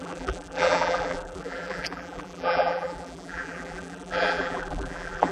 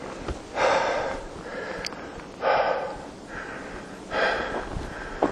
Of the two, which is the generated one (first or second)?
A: first